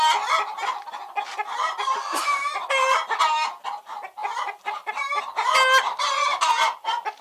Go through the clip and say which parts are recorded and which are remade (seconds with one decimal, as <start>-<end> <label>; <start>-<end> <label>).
0.0-4.2 recorded; 4.2-5.2 remade; 5.2-7.2 recorded